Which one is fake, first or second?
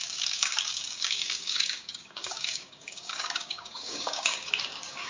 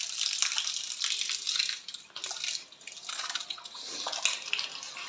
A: first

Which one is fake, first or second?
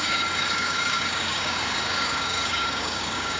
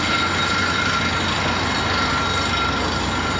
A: first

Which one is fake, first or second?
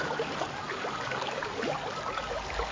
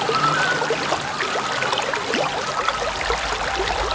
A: first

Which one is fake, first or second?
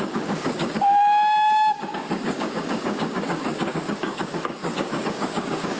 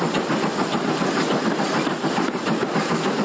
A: first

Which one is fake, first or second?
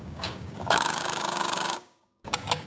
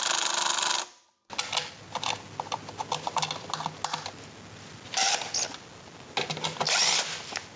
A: first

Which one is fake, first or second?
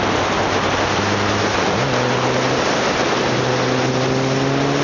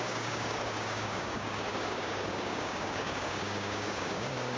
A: second